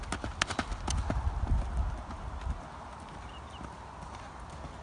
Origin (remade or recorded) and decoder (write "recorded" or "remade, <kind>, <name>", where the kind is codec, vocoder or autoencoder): recorded